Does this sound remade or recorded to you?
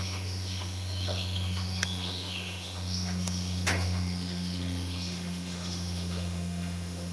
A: remade